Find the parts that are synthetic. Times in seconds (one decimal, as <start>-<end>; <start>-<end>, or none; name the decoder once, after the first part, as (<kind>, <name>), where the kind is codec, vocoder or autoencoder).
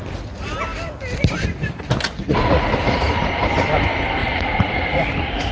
2.2-3.3 (vocoder, Vocos); 4.2-5.5